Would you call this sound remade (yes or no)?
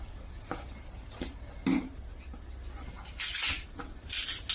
no